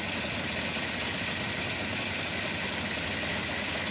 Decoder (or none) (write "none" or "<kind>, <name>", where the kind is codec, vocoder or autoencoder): none